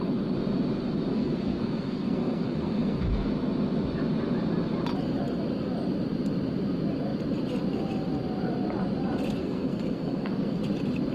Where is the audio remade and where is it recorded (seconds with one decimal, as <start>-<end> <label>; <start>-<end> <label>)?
0.0-1.1 recorded; 1.1-3.3 remade; 3.3-9.4 recorded; 9.4-10.6 remade; 10.6-11.1 recorded

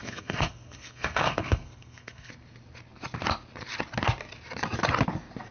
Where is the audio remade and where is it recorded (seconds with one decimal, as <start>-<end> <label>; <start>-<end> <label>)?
0.0-2.3 remade; 2.3-5.5 recorded

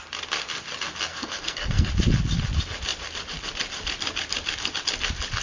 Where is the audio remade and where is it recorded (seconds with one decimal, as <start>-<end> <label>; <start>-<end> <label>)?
0.0-1.1 recorded; 1.1-1.9 remade; 1.9-5.4 recorded

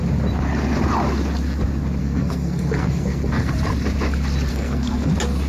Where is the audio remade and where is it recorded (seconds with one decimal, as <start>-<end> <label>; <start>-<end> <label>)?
0.0-2.0 recorded; 2.0-3.5 remade; 3.5-4.5 recorded; 4.5-5.1 remade; 5.1-5.5 recorded